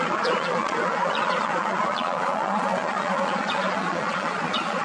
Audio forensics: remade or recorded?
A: remade